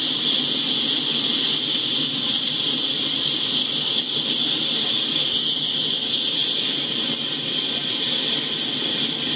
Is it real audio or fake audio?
real